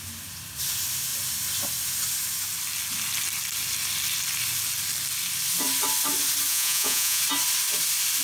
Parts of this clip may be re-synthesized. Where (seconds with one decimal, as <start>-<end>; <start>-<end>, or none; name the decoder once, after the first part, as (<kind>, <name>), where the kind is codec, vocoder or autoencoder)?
6.5-7.2 (vocoder, Vocos)